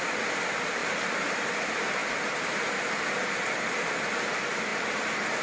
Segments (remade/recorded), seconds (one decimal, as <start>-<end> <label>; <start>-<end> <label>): 0.0-0.8 recorded; 0.8-1.5 remade; 1.5-2.0 recorded; 2.0-4.1 remade; 4.1-5.4 recorded